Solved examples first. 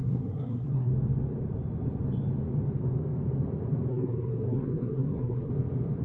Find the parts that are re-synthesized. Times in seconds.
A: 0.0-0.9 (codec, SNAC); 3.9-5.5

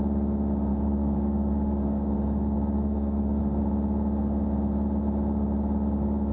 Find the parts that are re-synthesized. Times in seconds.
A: 0.7-3.4 (codec, DAC)

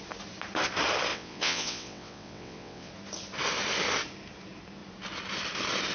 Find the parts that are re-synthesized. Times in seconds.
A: 1.1-2.9 (vocoder, WaveNeXt)

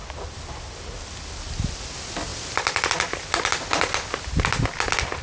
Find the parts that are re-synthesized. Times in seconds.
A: none

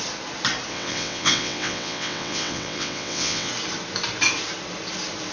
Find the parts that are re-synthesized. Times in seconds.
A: 0.7-3.5 (vocoder, WaveNeXt)

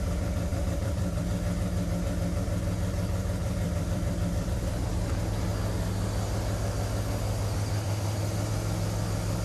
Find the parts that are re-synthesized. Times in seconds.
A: 0.5-1.2 (vocoder, BigVGAN v2); 3.4-4.9

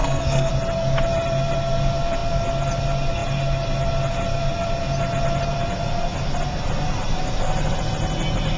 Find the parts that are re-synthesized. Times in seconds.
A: 0.0-0.5 (codec, SNAC)